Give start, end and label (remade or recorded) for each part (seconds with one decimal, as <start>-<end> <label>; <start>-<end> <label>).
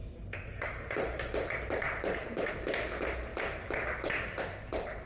0.0-2.5 remade; 2.5-5.1 recorded